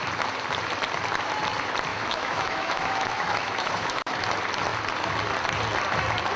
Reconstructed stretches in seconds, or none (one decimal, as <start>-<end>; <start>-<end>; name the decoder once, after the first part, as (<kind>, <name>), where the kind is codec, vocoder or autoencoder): 1.9-4.2 (autoencoder, DAC-VAE)